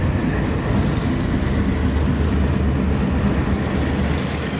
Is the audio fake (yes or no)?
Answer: no